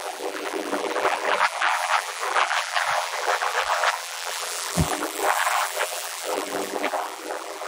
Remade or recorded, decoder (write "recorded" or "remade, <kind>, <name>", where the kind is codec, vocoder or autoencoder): remade, vocoder, BigVGAN v2